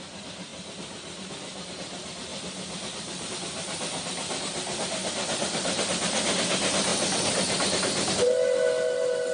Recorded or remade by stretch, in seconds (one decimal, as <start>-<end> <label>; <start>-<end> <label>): 0.0-2.3 recorded; 2.3-3.3 remade; 3.3-6.9 recorded; 6.9-8.1 remade; 8.1-9.3 recorded

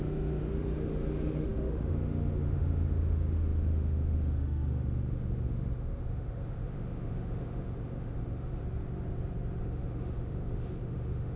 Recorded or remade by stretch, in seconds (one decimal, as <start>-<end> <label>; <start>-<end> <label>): 0.0-8.6 remade; 8.6-9.6 recorded; 9.6-11.4 remade